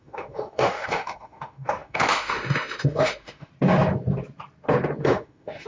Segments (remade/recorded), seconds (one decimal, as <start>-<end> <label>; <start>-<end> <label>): 0.0-3.5 remade; 3.5-5.0 recorded; 5.0-5.7 remade